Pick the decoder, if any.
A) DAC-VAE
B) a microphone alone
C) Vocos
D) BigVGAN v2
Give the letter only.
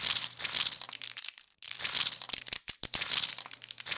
B